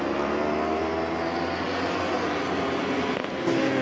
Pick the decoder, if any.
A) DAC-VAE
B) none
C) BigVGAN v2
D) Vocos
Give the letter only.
B